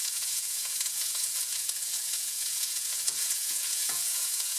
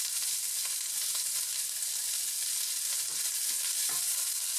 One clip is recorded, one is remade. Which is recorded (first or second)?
second